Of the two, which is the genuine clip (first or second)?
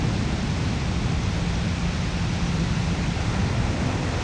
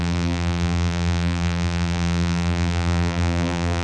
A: first